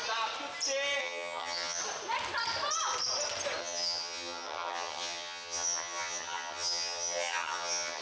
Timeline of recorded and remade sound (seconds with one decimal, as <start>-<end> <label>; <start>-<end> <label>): 0.0-1.0 recorded; 1.0-1.8 remade; 1.8-3.6 recorded; 3.6-8.0 remade